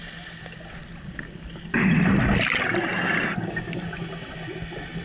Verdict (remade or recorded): recorded